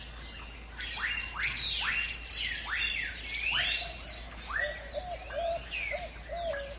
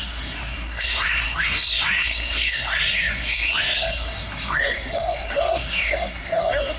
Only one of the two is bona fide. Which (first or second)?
first